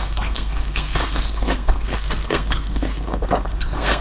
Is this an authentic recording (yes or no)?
no